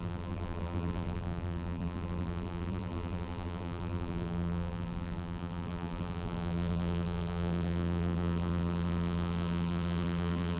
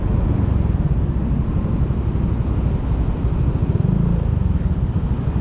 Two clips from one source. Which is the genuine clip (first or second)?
second